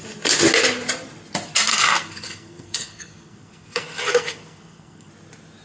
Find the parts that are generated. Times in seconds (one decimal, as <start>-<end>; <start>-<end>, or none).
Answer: 1.7-5.1